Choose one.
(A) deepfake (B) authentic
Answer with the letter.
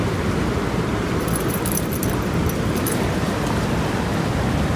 B